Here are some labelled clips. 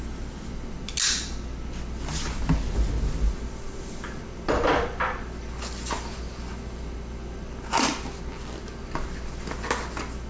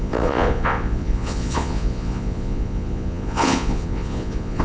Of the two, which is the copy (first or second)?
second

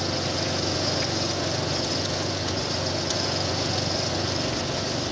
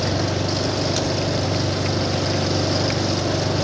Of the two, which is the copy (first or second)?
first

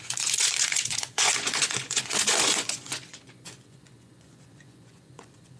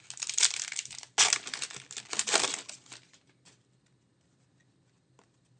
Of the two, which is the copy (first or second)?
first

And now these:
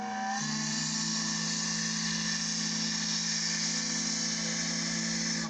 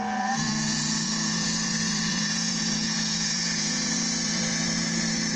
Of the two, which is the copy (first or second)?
second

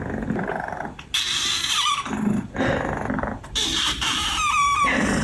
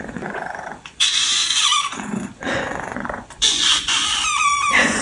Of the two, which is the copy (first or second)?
second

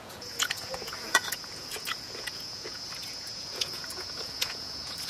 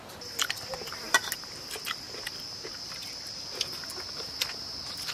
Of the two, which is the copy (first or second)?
first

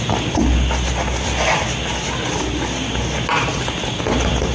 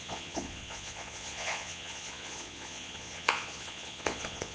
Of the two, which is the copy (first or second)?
second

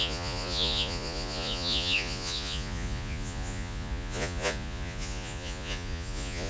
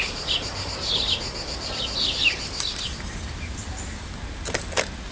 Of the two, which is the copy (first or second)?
first